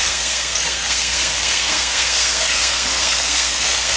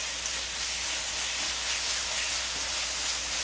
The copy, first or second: first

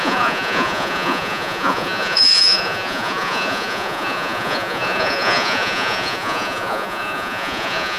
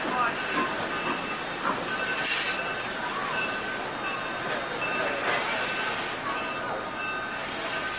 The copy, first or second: first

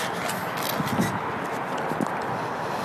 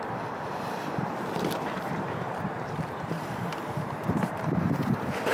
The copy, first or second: second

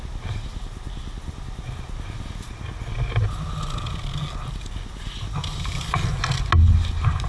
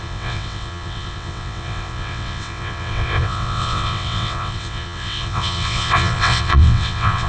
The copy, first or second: second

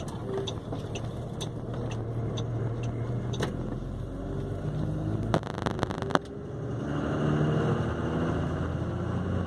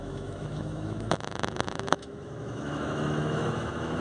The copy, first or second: second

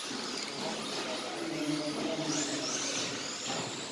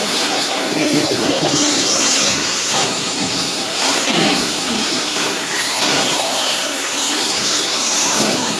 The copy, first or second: second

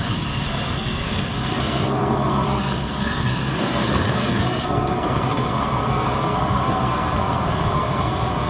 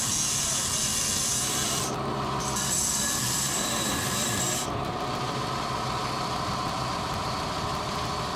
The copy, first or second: first